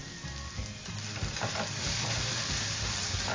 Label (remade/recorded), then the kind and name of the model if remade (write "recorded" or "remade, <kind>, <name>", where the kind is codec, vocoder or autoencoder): recorded